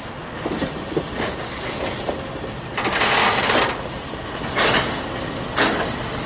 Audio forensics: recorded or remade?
recorded